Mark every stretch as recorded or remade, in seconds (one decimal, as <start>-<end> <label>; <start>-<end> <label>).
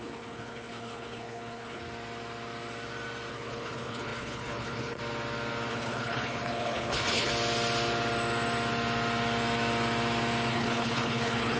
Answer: 0.0-1.8 remade; 1.8-3.3 recorded; 3.3-5.0 remade; 5.0-5.7 recorded; 5.7-7.3 remade; 7.3-10.5 recorded; 10.5-11.6 remade